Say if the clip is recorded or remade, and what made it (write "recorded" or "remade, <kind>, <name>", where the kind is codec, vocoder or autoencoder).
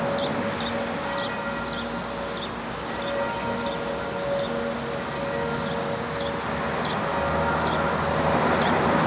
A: recorded